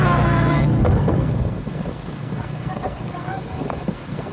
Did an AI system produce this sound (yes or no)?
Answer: yes